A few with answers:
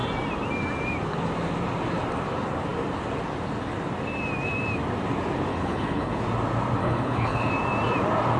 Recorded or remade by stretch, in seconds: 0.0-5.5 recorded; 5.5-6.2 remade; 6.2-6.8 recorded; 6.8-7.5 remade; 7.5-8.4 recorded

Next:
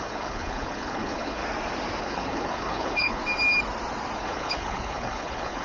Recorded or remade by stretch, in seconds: 0.0-1.4 remade; 1.4-2.0 recorded; 2.0-3.2 remade; 3.2-4.2 recorded; 4.2-5.6 remade